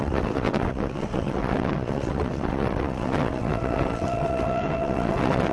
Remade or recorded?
remade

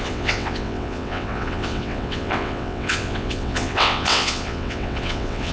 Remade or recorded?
remade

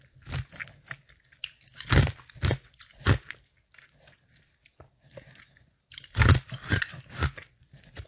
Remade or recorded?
recorded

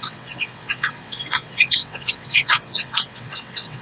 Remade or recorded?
remade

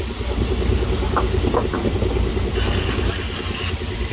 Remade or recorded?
recorded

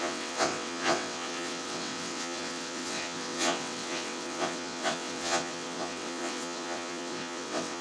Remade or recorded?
remade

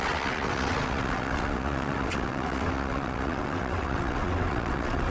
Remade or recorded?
remade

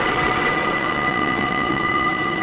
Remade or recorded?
remade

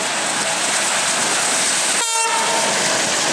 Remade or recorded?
recorded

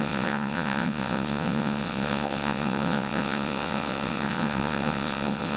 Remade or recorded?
remade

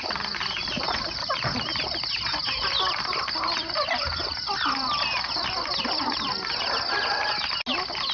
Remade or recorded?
recorded